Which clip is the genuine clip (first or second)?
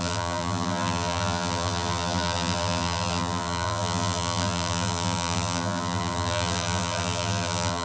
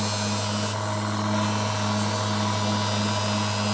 second